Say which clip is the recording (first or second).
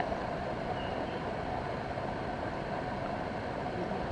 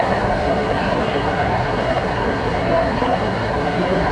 first